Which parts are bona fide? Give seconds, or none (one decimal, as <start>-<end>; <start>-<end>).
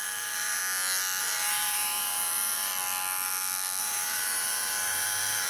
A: 0.6-1.2; 2.7-3.8